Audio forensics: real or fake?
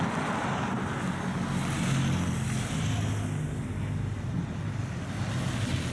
real